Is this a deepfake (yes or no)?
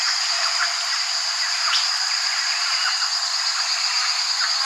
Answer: no